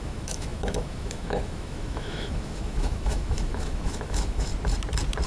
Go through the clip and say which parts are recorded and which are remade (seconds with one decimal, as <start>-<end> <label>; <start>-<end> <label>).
0.0-4.5 remade; 4.5-5.3 recorded